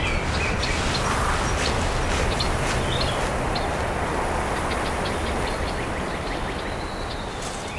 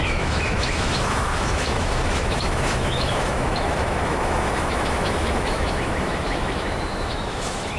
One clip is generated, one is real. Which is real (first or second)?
first